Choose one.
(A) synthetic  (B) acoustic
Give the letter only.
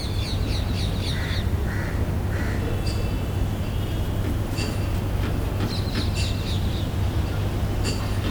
B